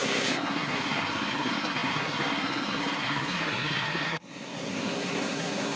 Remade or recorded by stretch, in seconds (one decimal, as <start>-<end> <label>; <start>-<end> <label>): 0.0-5.8 remade